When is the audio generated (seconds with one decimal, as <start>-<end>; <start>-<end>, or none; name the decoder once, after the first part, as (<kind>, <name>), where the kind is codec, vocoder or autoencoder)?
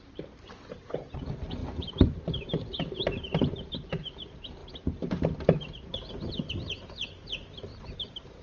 1.6-3.7 (vocoder, BigVGAN v2); 7.7-8.4